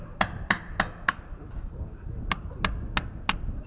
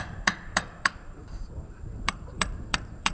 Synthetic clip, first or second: second